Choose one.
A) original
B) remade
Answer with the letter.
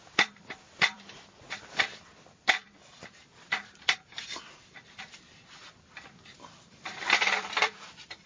B